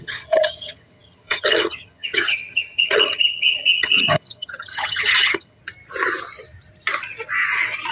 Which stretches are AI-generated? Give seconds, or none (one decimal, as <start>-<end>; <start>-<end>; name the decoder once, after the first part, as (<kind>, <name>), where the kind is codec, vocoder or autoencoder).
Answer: 0.0-5.6 (vocoder, HiFi-GAN)